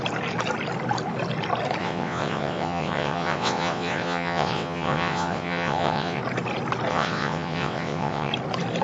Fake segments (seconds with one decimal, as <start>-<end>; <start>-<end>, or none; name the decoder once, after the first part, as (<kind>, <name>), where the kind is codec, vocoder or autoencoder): 1.8-6.2 (vocoder, WaveNeXt); 6.9-8.3